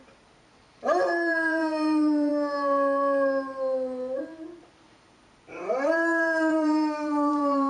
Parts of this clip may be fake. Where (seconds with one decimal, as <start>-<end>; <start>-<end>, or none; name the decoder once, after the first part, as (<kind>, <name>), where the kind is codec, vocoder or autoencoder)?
0.0-2.3 (vocoder, BigVGAN v2); 4.8-7.7